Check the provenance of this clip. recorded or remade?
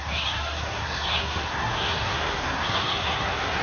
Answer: remade